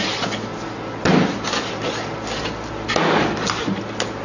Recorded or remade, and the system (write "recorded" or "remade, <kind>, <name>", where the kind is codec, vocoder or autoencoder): recorded